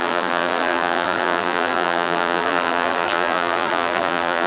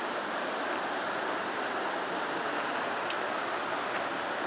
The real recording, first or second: second